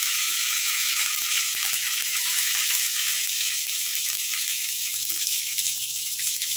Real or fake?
fake